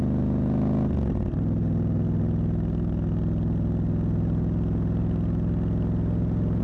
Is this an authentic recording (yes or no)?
yes